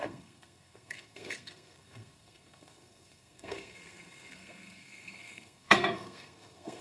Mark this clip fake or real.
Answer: fake